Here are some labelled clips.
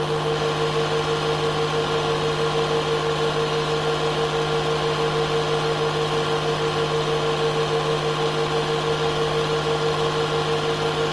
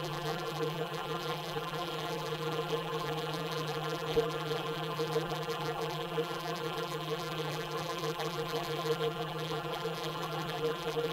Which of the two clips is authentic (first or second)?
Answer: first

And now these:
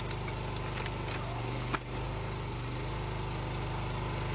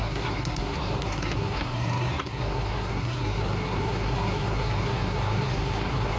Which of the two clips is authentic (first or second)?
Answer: first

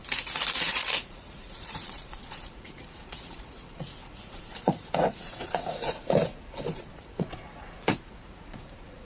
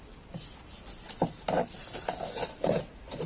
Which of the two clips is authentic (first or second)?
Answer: second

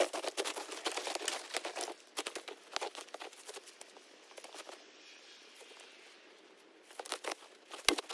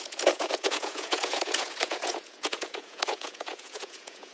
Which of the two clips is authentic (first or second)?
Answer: first